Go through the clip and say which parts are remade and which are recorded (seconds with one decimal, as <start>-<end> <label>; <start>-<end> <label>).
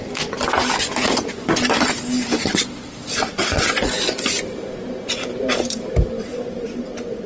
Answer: 0.0-4.4 recorded; 4.4-7.3 remade